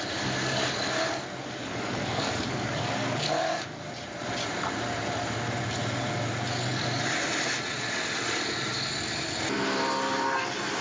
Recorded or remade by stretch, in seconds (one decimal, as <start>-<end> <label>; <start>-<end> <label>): 0.0-1.4 recorded; 1.4-3.8 remade; 3.8-10.8 recorded